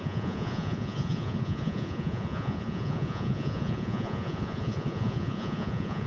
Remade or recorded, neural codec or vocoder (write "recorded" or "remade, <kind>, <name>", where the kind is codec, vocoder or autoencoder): remade, vocoder, Vocos